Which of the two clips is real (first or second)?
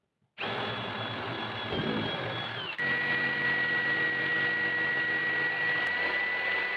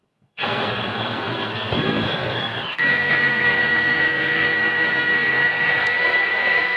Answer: first